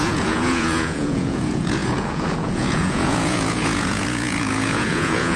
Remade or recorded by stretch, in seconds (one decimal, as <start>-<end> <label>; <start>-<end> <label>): 0.0-5.4 remade